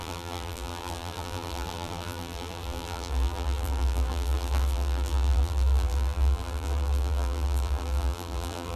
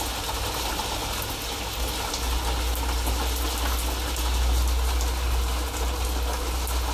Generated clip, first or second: first